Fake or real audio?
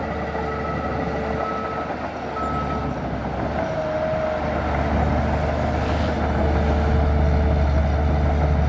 real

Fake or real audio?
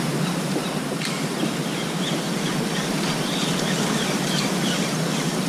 real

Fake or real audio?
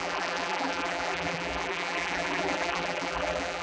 fake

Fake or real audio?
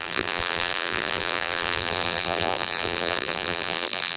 fake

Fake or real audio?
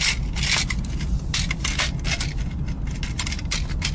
real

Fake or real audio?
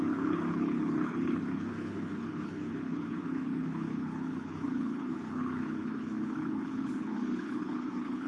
fake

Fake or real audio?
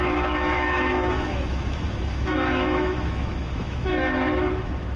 fake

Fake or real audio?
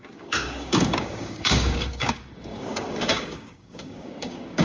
fake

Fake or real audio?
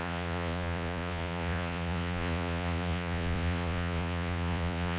fake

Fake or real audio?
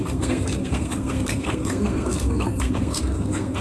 fake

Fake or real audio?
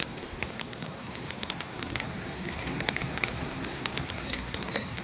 fake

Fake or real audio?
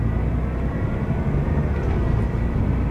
real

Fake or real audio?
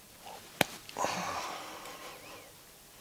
real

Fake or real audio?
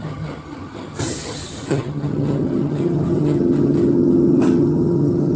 fake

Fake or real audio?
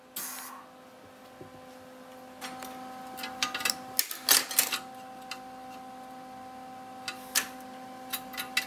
real